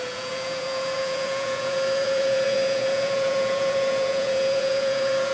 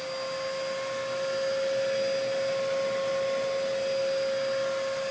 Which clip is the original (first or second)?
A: second